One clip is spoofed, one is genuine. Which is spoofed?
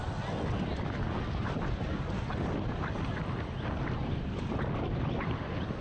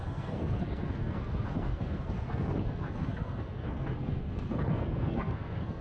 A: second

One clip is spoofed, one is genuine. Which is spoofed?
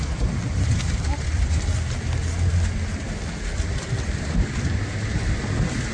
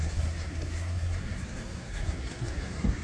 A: second